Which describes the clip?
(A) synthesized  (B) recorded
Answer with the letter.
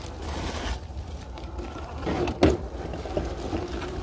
B